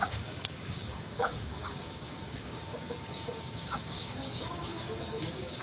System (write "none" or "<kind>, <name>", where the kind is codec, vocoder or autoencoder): codec, DAC